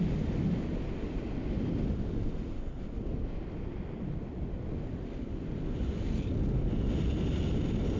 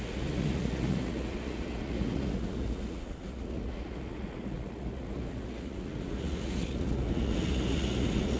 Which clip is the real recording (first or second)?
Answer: first